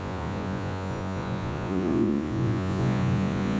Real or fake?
fake